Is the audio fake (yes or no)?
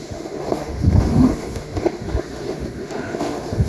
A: yes